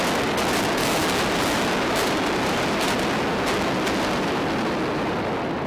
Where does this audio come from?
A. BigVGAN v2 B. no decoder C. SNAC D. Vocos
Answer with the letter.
B